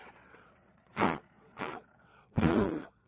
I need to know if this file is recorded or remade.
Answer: remade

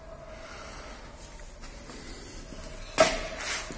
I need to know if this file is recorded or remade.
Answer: recorded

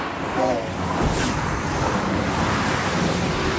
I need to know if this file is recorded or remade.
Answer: recorded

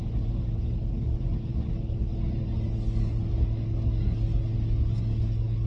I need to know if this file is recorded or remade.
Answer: recorded